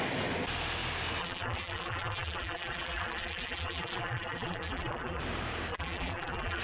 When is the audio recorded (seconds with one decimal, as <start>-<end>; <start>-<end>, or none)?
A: 0.0-1.2; 5.2-5.7